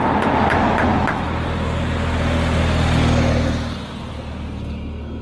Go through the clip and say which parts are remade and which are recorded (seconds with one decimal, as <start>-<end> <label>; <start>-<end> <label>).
0.0-4.6 recorded; 4.6-5.2 remade